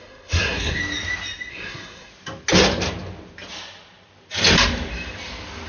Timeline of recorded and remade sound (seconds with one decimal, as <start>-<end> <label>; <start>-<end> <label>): 0.0-0.8 remade; 0.8-1.5 recorded; 1.5-2.1 remade; 2.1-5.7 recorded